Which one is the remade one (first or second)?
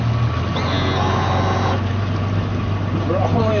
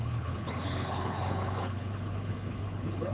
second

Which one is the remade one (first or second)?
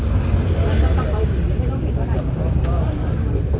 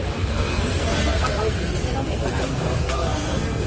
second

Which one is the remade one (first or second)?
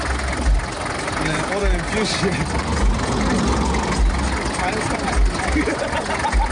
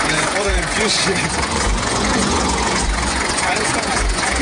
second